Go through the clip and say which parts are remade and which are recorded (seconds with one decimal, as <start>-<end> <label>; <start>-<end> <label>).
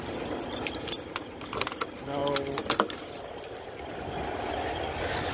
0.0-5.3 recorded